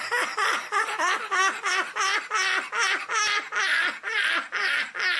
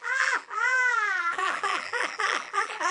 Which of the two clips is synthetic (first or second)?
second